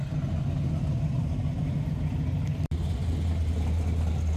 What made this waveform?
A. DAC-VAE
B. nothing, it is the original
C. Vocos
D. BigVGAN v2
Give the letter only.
B